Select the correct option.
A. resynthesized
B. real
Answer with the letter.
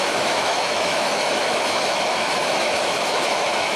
A